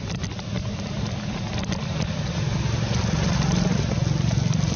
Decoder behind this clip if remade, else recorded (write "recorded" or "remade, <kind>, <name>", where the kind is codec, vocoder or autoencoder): recorded